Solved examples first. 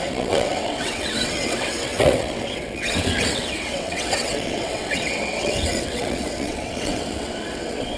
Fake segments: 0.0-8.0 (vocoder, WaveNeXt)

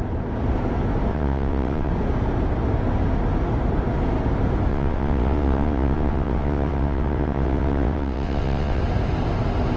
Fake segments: 1.1-1.9 (vocoder, WaveNeXt); 4.7-8.8